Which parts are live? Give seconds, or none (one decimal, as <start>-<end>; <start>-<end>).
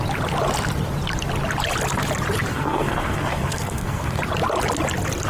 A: 0.0-2.5; 4.2-5.3